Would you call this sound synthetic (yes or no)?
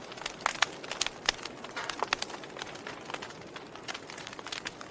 no